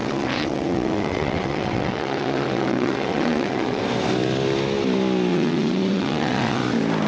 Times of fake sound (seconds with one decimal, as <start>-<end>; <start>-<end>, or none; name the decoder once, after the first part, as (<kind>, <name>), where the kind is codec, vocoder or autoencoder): 0.0-3.8 (vocoder, WaveNeXt); 5.3-6.6